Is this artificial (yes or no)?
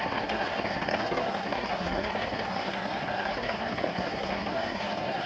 yes